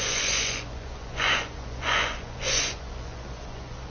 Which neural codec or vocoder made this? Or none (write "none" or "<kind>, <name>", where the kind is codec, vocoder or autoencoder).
vocoder, Vocos